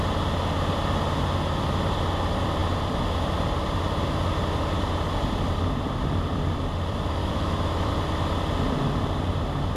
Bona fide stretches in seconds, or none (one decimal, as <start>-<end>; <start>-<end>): 0.0-7.2; 7.9-9.8